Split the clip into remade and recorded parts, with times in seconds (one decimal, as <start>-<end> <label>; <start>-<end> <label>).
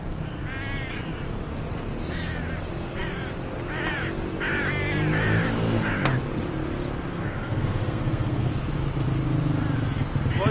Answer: 0.0-7.1 recorded; 7.1-8.5 remade; 8.5-10.5 recorded